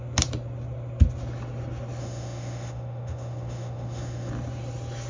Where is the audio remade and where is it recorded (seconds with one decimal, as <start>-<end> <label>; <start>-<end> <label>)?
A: 0.0-2.0 recorded; 2.0-4.3 remade; 4.3-5.1 recorded

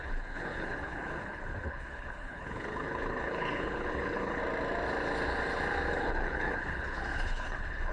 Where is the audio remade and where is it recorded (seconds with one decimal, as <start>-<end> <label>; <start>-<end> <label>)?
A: 0.0-4.4 remade; 4.4-5.9 recorded; 5.9-7.9 remade

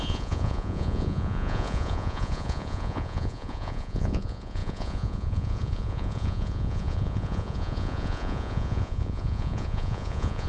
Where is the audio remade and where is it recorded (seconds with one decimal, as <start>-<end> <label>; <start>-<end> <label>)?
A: 0.0-10.5 remade

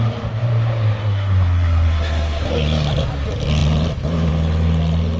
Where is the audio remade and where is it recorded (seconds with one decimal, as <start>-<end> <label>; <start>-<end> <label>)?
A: 0.0-1.0 recorded; 1.0-2.5 remade; 2.5-5.2 recorded

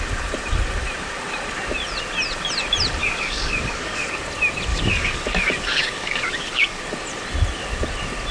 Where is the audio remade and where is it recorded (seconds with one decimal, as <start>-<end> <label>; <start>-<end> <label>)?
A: 0.0-3.0 recorded; 3.0-4.2 remade; 4.2-4.7 recorded; 4.7-6.8 remade; 6.8-8.3 recorded

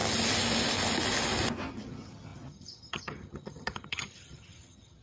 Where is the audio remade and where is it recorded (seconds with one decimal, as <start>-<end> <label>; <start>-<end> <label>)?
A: 0.0-1.7 recorded; 1.7-5.0 remade

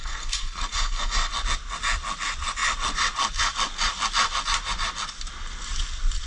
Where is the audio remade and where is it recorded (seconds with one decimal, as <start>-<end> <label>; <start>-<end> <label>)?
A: 0.0-1.3 remade; 1.3-6.3 recorded